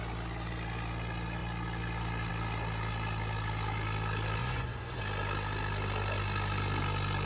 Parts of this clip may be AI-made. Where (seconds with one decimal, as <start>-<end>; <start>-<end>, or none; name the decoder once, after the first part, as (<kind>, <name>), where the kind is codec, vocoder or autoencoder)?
4.4-5.0 (vocoder, Vocos)